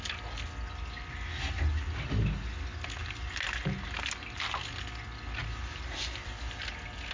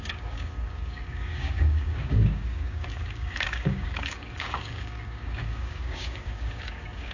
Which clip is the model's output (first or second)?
second